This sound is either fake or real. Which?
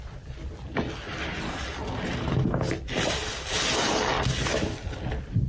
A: real